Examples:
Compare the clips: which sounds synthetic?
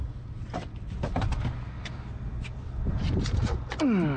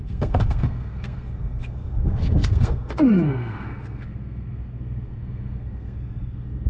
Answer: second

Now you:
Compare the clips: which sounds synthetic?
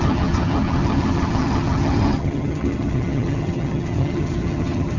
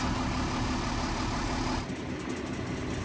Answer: first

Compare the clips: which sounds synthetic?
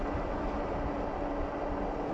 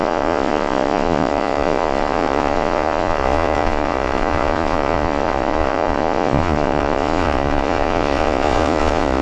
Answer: second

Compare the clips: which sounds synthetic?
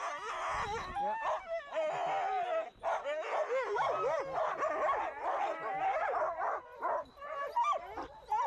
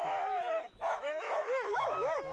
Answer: second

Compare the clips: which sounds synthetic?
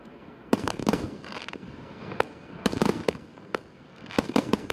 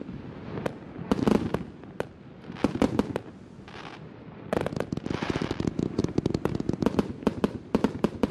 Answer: first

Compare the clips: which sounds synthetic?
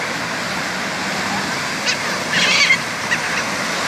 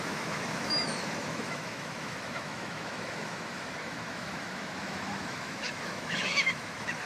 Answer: second